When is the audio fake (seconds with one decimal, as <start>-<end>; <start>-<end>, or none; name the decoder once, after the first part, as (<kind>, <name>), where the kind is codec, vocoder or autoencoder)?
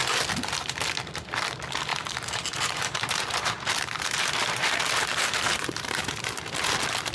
1.9-6.2 (vocoder, BigVGAN v2)